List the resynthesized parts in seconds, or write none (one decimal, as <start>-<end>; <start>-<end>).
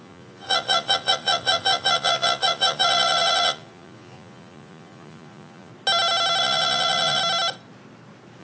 0.0-5.7; 6.4-7.2